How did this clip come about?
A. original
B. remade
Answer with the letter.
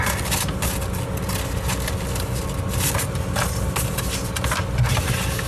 A